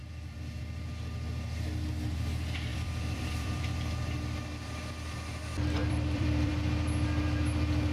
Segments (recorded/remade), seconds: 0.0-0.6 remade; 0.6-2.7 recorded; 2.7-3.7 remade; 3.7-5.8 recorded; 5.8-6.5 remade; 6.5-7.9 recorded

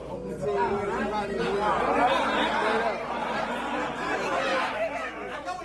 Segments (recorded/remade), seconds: 0.0-4.5 recorded; 4.5-5.6 remade

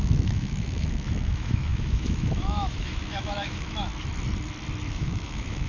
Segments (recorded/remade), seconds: 0.0-3.9 remade; 3.9-4.9 recorded; 4.9-5.7 remade